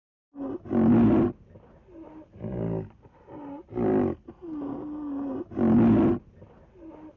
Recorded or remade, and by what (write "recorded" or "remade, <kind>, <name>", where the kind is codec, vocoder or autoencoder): recorded